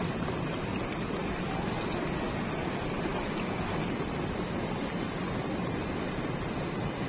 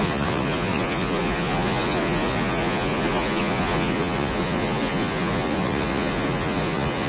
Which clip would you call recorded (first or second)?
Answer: first